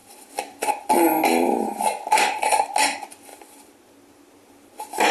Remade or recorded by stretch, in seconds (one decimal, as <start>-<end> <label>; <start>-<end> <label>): 0.0-5.1 recorded